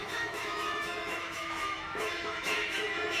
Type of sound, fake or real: fake